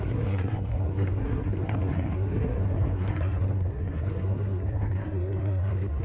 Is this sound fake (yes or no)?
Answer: yes